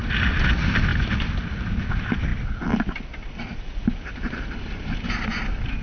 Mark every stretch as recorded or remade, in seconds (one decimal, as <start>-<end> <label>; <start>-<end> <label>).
0.0-0.5 remade; 0.5-2.3 recorded; 2.3-5.1 remade; 5.1-5.8 recorded